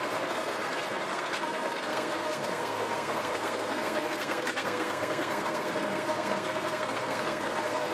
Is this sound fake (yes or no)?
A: yes